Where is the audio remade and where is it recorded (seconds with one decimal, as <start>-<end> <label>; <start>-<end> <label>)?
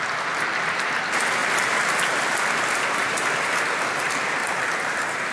0.0-4.4 recorded; 4.4-5.3 remade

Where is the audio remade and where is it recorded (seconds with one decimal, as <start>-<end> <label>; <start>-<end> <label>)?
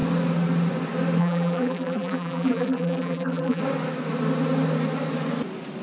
0.0-1.2 recorded; 1.2-3.6 remade; 3.6-5.8 recorded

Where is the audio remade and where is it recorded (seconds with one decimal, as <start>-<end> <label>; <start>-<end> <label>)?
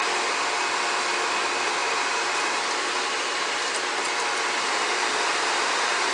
0.0-1.8 recorded; 1.8-4.0 remade; 4.0-6.1 recorded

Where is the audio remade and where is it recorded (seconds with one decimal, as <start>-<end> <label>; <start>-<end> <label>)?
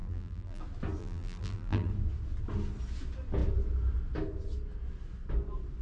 0.0-0.6 remade; 0.6-1.0 recorded; 1.0-1.9 remade; 1.9-5.8 recorded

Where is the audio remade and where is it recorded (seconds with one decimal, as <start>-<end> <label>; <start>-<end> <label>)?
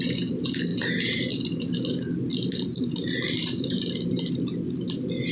0.0-0.7 recorded; 0.7-1.3 remade; 1.3-2.3 recorded; 2.3-4.3 remade; 4.3-5.3 recorded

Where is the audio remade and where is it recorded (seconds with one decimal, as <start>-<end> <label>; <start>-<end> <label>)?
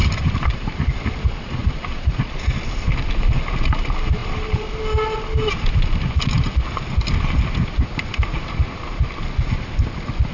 0.0-1.1 remade; 1.1-1.6 recorded; 1.6-2.1 remade; 2.1-10.3 recorded